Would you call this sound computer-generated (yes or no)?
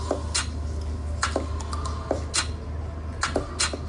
no